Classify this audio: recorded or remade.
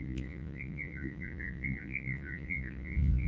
remade